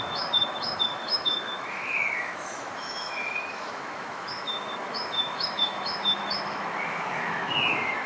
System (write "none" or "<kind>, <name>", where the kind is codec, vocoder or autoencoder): autoencoder, DAC-VAE